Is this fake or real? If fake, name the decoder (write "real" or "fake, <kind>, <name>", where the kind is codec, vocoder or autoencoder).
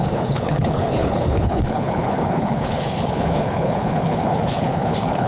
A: fake, codec, HILCodec